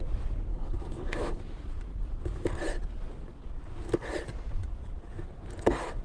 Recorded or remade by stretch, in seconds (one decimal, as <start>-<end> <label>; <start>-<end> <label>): 0.0-0.5 recorded; 0.5-1.4 remade; 1.4-6.0 recorded